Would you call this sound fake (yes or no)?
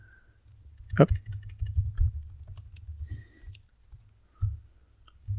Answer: no